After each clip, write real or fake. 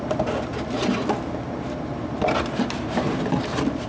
real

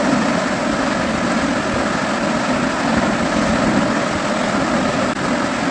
real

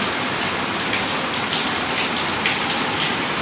real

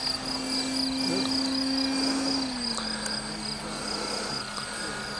real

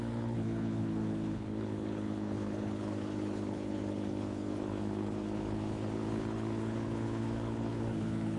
fake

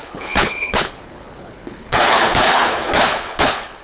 fake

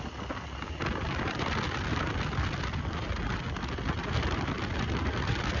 real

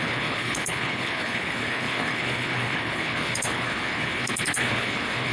fake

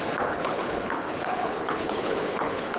fake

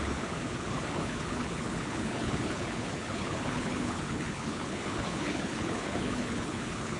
fake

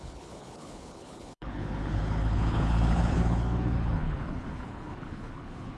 fake